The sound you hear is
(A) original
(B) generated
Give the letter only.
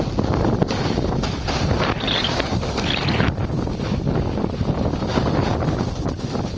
A